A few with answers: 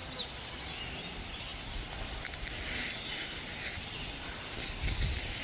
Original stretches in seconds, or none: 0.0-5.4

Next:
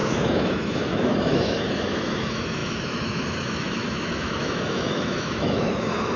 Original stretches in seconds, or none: none

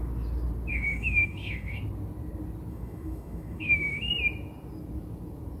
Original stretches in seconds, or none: 0.0-0.7; 1.8-2.7; 4.1-5.6

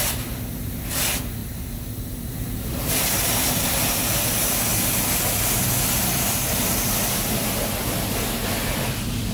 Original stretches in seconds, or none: 0.0-9.3